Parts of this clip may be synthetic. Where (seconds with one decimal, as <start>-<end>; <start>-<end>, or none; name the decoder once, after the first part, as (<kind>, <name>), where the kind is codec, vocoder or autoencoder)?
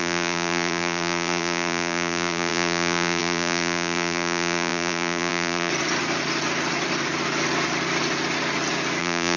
0.0-5.7 (vocoder, BigVGAN v2); 9.0-9.4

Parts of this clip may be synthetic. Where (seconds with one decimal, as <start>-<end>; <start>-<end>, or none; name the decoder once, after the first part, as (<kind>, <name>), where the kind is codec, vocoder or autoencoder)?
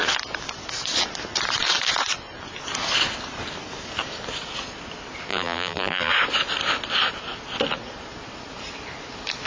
5.3-6.1 (vocoder, BigVGAN v2)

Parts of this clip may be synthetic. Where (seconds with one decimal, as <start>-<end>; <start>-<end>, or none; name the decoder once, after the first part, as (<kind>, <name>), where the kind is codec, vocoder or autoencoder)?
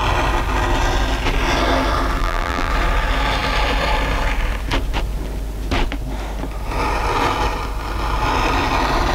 2.2-2.7 (vocoder, BigVGAN v2)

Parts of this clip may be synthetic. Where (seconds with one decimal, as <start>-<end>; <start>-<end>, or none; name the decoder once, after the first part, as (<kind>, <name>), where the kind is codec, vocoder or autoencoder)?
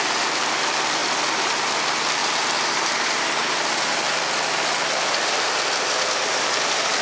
0.0-1.0 (vocoder, BigVGAN v2); 1.5-7.0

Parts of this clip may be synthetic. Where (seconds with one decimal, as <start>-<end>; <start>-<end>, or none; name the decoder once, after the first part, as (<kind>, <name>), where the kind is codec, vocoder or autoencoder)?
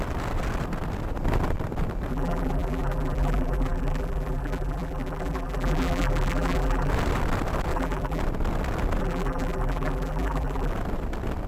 2.1-6.9 (vocoder, BigVGAN v2); 7.7-8.2; 9.0-10.7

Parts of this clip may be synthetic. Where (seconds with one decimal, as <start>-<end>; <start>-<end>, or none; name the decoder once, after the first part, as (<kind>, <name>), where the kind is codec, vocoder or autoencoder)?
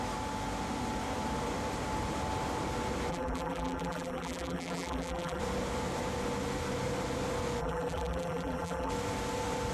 3.1-5.4 (vocoder, BigVGAN v2); 7.6-8.9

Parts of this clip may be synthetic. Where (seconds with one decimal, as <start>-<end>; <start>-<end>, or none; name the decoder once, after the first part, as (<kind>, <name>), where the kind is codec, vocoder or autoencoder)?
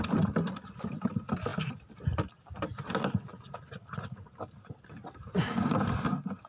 1.5-5.4 (vocoder, BigVGAN v2)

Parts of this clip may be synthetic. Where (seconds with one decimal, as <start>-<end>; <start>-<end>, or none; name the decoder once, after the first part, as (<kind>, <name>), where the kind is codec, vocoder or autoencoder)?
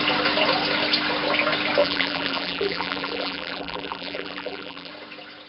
1.8-4.9 (vocoder, BigVGAN v2)